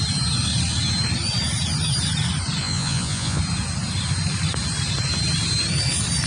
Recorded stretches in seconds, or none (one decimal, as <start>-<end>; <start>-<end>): 0.0-2.6; 3.4-6.3